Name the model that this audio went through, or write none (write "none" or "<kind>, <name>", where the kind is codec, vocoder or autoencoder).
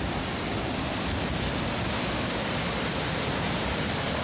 none